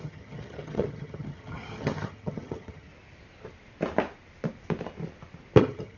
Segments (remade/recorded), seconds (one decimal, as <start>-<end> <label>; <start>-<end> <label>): 0.0-2.9 remade; 2.9-5.6 recorded; 5.6-6.0 remade